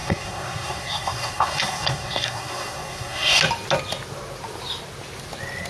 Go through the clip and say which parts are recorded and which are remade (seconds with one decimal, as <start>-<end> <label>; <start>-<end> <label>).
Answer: 0.0-3.4 remade; 3.4-5.7 recorded